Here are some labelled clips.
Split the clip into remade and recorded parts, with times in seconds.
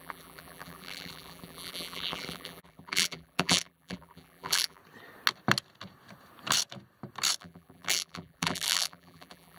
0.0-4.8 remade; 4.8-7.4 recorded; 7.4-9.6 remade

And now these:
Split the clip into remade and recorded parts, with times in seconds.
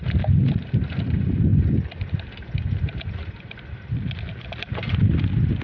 0.0-5.6 recorded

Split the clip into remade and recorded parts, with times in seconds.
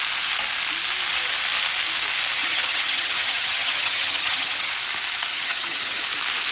0.0-2.4 recorded; 2.4-4.7 remade; 4.7-5.3 recorded; 5.3-6.0 remade; 6.0-6.5 recorded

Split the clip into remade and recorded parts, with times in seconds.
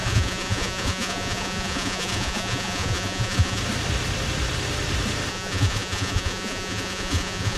0.0-3.6 remade; 3.6-5.3 recorded; 5.3-7.6 remade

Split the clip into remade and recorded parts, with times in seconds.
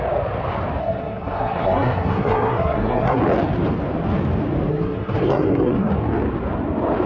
0.0-0.8 recorded; 0.8-3.2 remade; 3.2-4.7 recorded; 4.7-5.9 remade; 5.9-7.1 recorded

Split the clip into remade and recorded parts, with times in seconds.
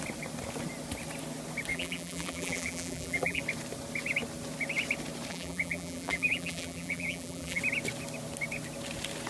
0.0-1.7 recorded; 1.7-3.4 remade; 3.4-5.3 recorded; 5.3-7.6 remade; 7.6-9.3 recorded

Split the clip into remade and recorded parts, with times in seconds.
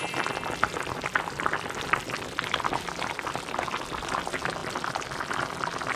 0.0-3.6 remade; 3.6-6.0 recorded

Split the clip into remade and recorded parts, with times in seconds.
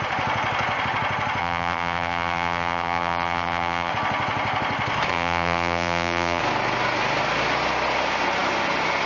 0.0-1.4 recorded; 1.4-3.9 remade; 3.9-5.1 recorded; 5.1-6.4 remade; 6.4-9.1 recorded